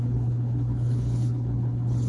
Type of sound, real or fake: fake